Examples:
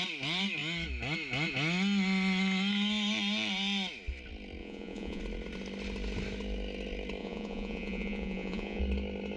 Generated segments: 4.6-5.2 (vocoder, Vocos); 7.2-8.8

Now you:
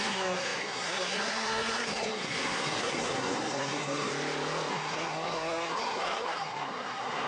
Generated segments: 0.0-4.1 (codec, SNAC); 4.7-7.3

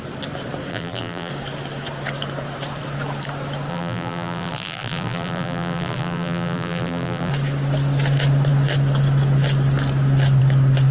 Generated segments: 0.7-1.3 (vocoder, BigVGAN v2); 3.7-7.3

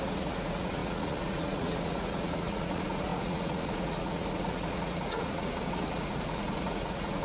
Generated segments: 0.0-7.2 (vocoder, Vocos)

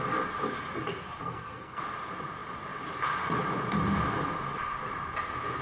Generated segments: 1.2-1.8 (codec, SNAC)